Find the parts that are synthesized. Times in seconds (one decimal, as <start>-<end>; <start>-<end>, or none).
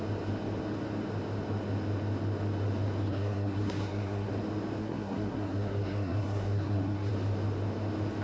3.1-4.3; 4.8-7.1